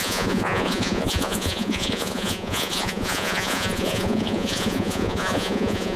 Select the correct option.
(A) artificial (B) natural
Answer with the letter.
A